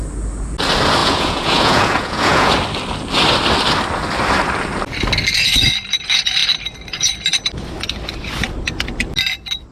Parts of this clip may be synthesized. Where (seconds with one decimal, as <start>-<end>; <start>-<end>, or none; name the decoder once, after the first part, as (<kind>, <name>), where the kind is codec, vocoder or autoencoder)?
1.0-2.5 (vocoder, Vocos)